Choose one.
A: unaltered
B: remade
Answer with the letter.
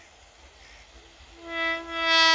A